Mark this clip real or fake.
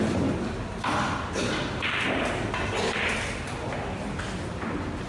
real